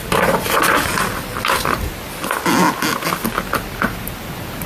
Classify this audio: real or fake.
real